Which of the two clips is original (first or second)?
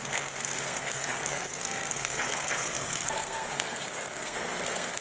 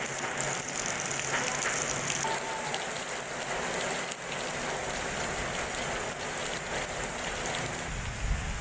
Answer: second